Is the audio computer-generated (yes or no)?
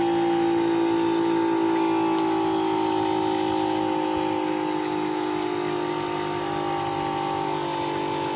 no